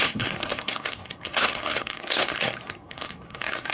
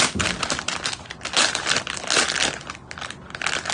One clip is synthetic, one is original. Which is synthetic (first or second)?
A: first